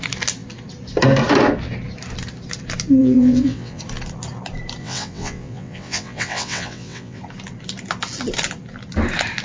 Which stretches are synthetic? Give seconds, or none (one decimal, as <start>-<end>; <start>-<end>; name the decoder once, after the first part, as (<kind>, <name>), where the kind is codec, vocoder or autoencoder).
3.0-3.8 (vocoder, WaveNeXt); 4.8-7.2